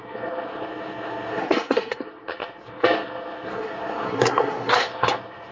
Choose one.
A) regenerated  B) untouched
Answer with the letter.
A